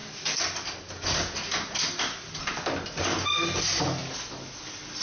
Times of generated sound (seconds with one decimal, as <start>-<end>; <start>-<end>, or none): none